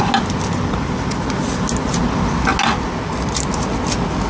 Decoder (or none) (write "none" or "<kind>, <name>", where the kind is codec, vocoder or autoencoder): none